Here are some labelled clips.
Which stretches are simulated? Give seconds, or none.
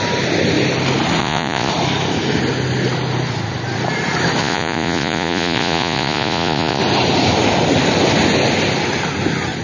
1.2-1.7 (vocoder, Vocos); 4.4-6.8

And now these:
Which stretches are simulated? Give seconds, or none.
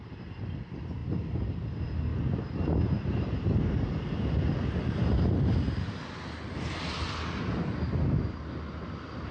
none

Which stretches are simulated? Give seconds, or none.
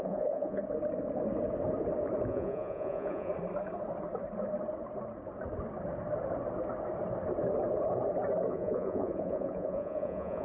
0.0-0.6 (vocoder, Vocos); 2.3-3.3; 8.5-10.4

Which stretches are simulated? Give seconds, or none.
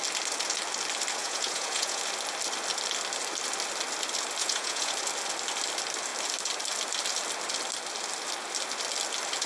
1.2-2.0 (vocoder, Vocos); 4.4-4.9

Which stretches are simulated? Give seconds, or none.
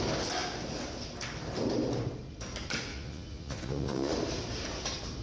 2.9-4.1 (vocoder, Vocos)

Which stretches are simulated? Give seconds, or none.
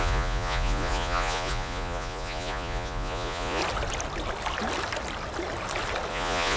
0.0-3.6 (vocoder, Vocos); 6.1-6.6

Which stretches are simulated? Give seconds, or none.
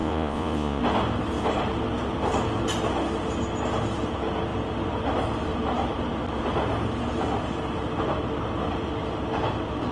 0.0-0.8 (vocoder, Vocos)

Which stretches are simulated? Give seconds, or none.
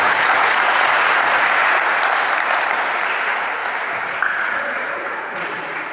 0.0-2.1 (vocoder, Vocos); 3.2-3.6; 4.3-5.9